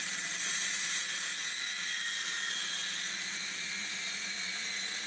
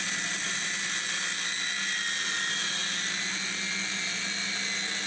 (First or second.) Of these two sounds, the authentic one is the second